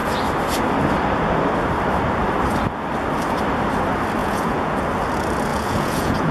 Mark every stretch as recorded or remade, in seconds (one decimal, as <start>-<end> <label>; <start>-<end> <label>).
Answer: 0.0-4.2 recorded; 4.2-4.8 remade; 4.8-5.5 recorded; 5.5-6.3 remade